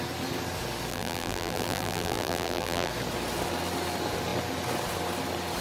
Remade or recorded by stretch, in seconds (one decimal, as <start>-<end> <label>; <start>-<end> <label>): 0.0-0.9 recorded; 0.9-2.9 remade; 2.9-5.6 recorded